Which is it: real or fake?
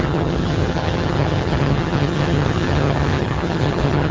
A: fake